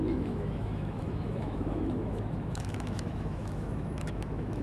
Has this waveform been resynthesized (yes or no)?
yes